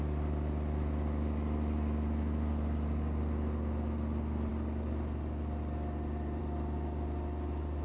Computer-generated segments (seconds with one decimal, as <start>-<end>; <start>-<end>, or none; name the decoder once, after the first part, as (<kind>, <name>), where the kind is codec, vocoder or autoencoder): none